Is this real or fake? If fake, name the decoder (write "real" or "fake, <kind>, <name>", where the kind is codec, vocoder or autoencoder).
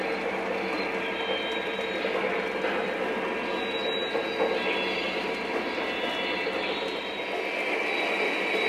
real